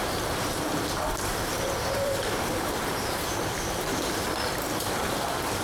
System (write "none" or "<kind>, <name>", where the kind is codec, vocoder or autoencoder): vocoder, BigVGAN v2